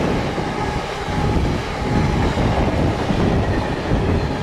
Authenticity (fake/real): real